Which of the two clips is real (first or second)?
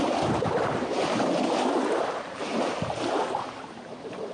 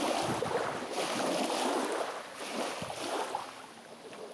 second